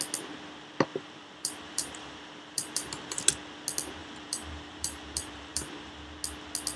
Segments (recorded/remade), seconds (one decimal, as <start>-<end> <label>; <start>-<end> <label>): 0.0-0.9 recorded; 0.9-3.2 remade; 3.2-4.0 recorded; 4.0-5.9 remade; 5.9-6.8 recorded